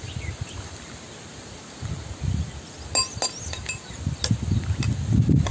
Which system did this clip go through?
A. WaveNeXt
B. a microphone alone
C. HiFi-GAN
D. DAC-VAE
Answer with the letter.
B